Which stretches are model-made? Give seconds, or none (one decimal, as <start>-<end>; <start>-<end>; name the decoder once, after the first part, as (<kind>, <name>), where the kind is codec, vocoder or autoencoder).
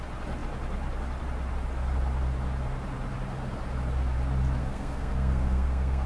4.6-6.1 (codec, SNAC)